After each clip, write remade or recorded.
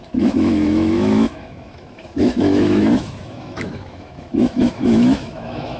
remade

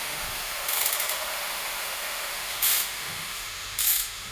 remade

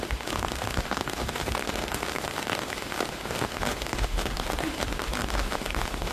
remade